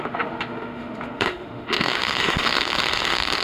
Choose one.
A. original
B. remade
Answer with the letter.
B